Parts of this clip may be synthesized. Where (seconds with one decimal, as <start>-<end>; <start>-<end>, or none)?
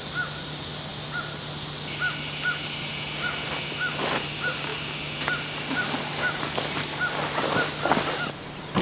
none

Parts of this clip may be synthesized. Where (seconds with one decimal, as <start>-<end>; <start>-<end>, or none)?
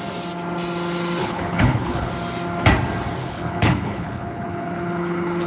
1.2-2.1; 3.2-5.5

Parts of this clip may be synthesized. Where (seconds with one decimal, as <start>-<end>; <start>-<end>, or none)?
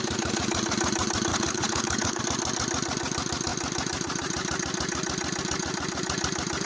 1.3-2.2